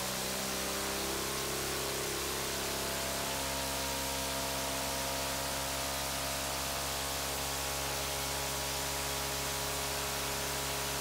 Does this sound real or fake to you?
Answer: real